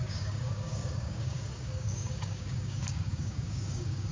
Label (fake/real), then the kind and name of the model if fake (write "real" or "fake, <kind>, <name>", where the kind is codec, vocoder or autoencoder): fake, codec, DAC